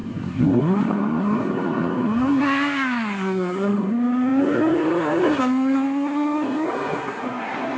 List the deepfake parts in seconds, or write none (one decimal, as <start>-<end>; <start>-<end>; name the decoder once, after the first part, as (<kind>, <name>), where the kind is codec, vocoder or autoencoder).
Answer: 0.0-7.8 (codec, SNAC)